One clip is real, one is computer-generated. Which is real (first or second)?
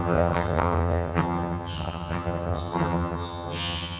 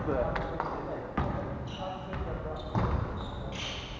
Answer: second